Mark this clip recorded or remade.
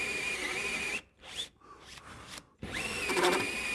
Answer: remade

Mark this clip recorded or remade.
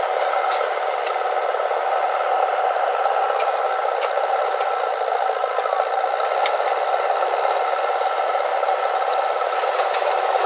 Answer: remade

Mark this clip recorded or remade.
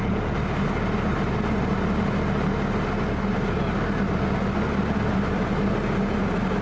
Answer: recorded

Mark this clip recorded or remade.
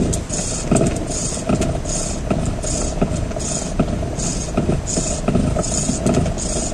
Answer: recorded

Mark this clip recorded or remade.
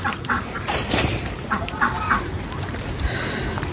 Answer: remade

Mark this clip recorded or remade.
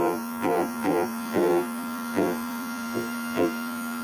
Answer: remade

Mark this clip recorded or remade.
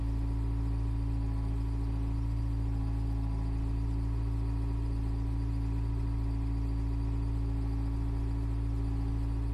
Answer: recorded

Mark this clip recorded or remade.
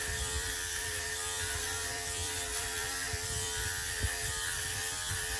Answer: remade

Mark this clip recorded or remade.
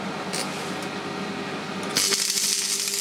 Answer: recorded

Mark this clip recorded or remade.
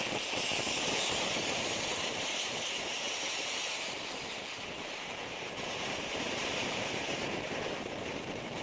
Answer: remade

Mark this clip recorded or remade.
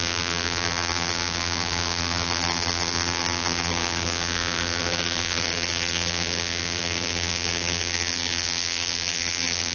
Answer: remade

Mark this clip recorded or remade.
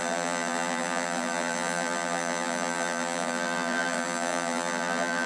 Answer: remade